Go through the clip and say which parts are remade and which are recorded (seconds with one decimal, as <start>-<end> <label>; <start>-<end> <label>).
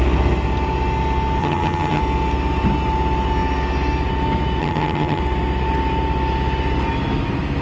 0.0-1.4 recorded; 1.4-2.0 remade; 2.0-4.6 recorded; 4.6-5.2 remade; 5.2-7.6 recorded